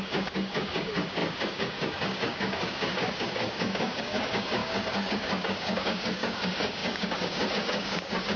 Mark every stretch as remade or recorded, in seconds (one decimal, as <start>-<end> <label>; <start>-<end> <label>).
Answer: 0.0-8.4 remade

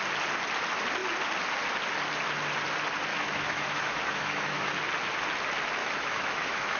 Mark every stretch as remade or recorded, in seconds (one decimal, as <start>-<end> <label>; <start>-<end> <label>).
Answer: 0.0-3.1 recorded; 3.1-4.7 remade; 4.7-5.8 recorded; 5.8-6.8 remade

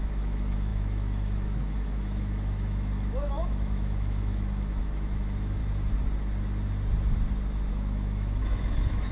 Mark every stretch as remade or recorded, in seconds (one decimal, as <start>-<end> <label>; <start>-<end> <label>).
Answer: 0.0-5.6 remade; 5.6-7.7 recorded; 7.7-9.1 remade

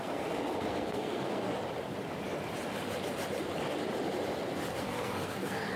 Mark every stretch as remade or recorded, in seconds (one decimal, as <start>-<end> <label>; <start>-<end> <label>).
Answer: 0.0-1.5 remade; 1.5-4.7 recorded; 4.7-5.8 remade

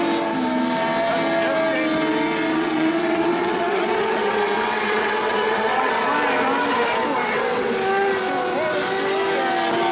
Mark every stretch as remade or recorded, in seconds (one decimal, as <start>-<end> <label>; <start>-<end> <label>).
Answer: 0.0-2.5 recorded; 2.5-5.9 remade; 5.9-7.2 recorded; 7.2-7.7 remade; 7.7-9.9 recorded

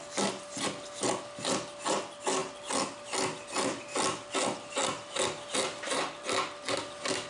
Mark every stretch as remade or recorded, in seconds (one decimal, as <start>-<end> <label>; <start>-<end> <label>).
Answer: 0.0-7.3 recorded

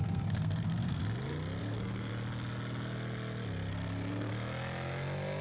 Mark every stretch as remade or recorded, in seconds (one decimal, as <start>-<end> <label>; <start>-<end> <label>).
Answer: 0.0-1.0 remade; 1.0-1.6 recorded; 1.6-2.1 remade; 2.1-3.7 recorded; 3.7-4.3 remade; 4.3-5.4 recorded

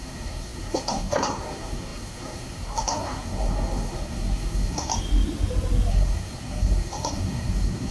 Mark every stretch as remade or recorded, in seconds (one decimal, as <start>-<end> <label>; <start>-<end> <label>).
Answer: 0.0-4.9 remade; 4.9-5.9 recorded; 5.9-7.9 remade